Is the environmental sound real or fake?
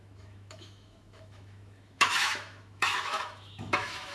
fake